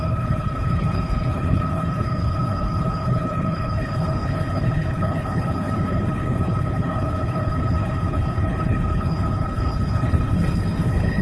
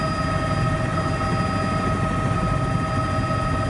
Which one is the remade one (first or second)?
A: first